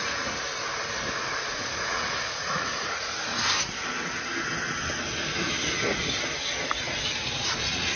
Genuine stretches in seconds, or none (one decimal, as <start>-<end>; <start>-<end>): 0.7-1.3; 3.3-7.3